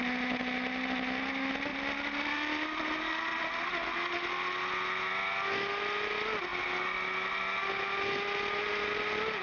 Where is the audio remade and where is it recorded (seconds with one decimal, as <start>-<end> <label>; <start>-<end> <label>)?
0.0-9.4 recorded